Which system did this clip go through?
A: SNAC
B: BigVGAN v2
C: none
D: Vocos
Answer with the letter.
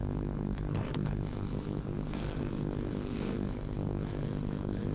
A